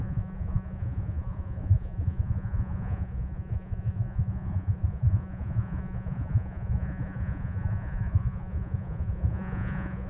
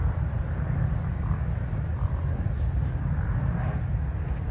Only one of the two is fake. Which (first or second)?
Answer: first